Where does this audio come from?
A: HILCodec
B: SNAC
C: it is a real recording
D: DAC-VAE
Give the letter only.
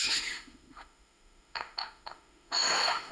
D